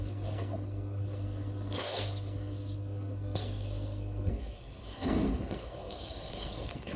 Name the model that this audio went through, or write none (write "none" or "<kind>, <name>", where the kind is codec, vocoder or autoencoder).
codec, SNAC